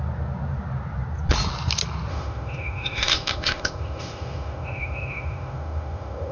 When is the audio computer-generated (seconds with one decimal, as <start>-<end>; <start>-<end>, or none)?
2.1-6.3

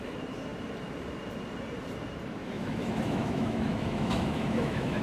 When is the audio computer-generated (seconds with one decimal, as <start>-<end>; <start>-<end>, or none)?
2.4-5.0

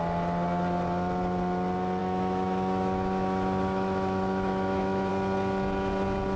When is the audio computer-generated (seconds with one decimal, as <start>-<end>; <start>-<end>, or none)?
2.0-5.1

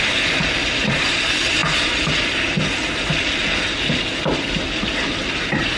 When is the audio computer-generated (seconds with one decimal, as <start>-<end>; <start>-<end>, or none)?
none

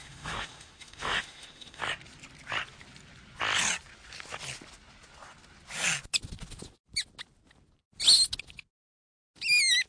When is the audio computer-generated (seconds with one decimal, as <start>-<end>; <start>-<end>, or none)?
0.0-1.8

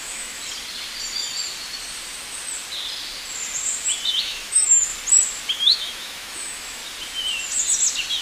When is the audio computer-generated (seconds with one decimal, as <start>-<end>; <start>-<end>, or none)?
0.0-0.4; 4.2-4.9; 5.5-6.8